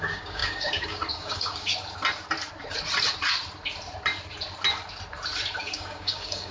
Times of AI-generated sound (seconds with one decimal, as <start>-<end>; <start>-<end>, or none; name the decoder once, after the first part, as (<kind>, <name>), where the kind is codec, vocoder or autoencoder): 0.0-1.7 (codec, DAC); 5.6-6.5